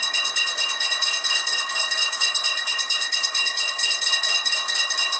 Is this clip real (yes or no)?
no